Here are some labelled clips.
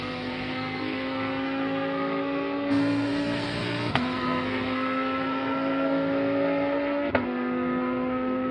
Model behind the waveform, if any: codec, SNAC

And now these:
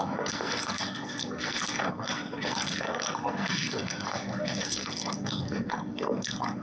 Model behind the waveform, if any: codec, SNAC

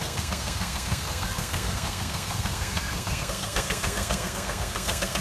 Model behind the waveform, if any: codec, SNAC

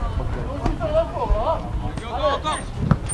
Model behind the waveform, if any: none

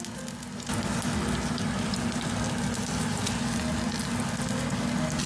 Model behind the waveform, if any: none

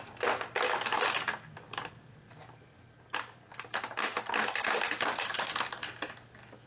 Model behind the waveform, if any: none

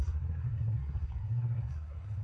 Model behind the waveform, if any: codec, SNAC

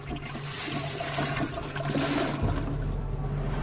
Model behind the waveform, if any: none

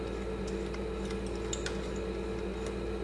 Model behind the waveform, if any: none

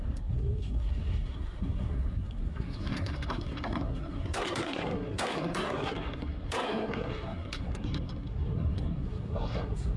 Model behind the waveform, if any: codec, SNAC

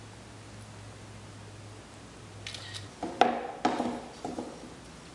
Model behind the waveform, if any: none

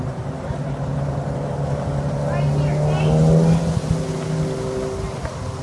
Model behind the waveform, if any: none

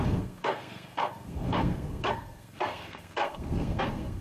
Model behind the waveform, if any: codec, SNAC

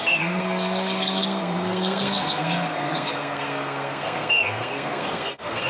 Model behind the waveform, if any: codec, SNAC